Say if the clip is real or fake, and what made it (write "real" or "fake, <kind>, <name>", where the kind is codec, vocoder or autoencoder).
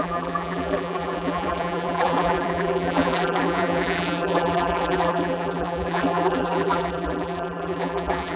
fake, vocoder, BigVGAN v2